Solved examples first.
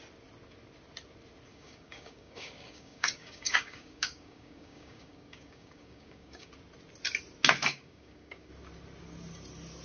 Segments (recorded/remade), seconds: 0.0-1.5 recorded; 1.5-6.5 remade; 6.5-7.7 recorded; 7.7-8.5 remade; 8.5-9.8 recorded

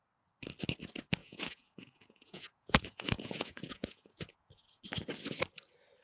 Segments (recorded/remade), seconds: 0.0-1.2 recorded; 1.2-4.8 remade; 4.8-6.0 recorded

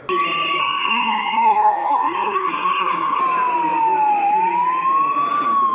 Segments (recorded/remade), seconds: 0.0-0.6 recorded; 0.6-3.2 remade; 3.2-5.7 recorded

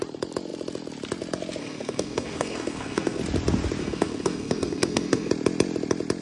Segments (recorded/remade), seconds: 0.0-1.6 recorded; 1.6-3.2 remade; 3.2-3.8 recorded; 3.8-5.3 remade; 5.3-6.2 recorded

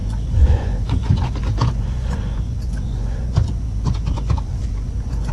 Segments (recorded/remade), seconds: 0.0-5.3 remade

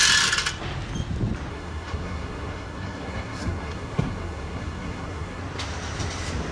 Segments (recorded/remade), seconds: 0.0-1.5 recorded; 1.5-5.4 remade; 5.4-6.5 recorded